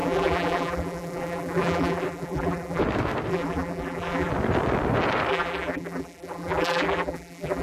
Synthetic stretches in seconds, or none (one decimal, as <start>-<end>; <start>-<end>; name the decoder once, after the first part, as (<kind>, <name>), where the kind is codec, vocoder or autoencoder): 0.0-2.8 (vocoder, BigVGAN v2); 3.3-4.3; 5.3-7.6